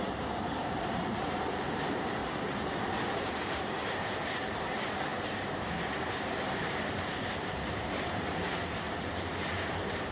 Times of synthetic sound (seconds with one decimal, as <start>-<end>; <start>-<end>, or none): 0.0-2.2; 3.2-8.6